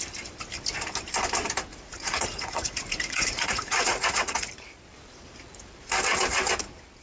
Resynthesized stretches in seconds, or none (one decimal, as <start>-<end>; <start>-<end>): 1.7-4.5